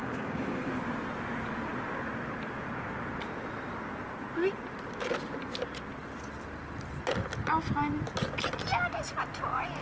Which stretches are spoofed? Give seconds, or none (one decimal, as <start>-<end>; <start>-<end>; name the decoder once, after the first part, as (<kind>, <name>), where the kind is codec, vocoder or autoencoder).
0.0-0.7 (codec, DAC)

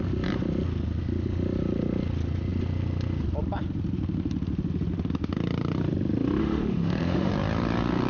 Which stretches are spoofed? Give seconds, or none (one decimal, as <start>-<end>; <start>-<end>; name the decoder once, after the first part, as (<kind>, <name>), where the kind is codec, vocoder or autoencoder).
6.4-7.3 (autoencoder, DAC-VAE)

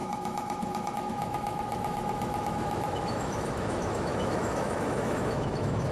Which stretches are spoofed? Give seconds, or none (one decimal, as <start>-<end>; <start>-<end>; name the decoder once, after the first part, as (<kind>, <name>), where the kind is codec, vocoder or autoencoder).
0.0-5.9 (autoencoder, DAC-VAE)

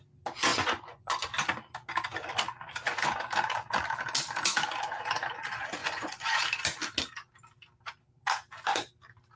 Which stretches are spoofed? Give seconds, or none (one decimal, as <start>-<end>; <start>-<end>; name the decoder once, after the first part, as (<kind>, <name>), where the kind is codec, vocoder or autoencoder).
0.5-1.3 (vocoder, Vocos); 5.8-6.4

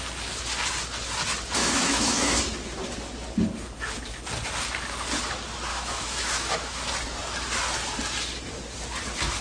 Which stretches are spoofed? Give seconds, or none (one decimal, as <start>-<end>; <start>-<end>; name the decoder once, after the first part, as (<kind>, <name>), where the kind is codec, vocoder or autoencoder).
1.6-2.4 (autoencoder, DAC-VAE); 5.7-6.9